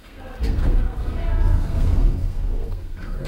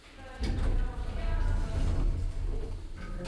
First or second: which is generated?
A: first